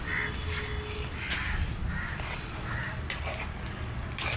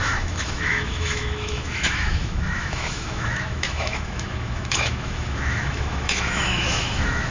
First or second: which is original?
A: first